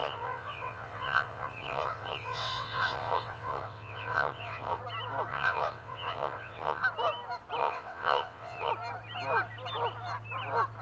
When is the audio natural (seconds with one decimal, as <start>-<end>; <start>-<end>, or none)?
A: 4.8-5.3; 6.8-7.6; 8.7-10.8